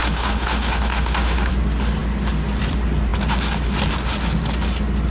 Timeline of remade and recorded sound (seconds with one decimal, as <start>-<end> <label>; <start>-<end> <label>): 0.0-1.5 remade; 1.5-5.1 recorded